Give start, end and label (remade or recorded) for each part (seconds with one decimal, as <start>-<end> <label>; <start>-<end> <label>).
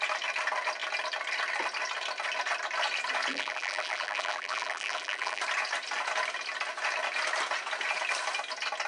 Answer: 0.0-3.3 recorded; 3.3-5.4 remade; 5.4-8.9 recorded